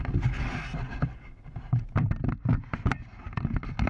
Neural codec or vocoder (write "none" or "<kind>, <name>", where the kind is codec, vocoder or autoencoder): none